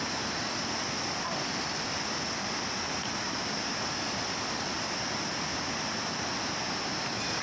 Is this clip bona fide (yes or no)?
yes